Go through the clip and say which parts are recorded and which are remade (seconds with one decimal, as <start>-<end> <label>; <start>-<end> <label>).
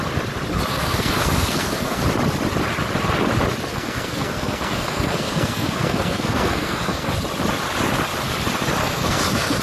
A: 0.0-0.7 recorded; 0.7-2.0 remade; 2.0-3.7 recorded; 3.7-7.1 remade; 7.1-8.8 recorded; 8.8-9.6 remade